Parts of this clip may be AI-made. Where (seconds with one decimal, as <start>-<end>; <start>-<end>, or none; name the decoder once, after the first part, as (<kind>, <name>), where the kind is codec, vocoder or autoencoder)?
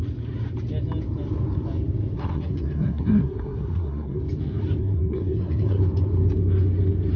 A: 2.2-4.2 (codec, SNAC); 4.8-5.8